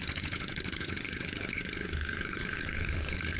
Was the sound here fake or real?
fake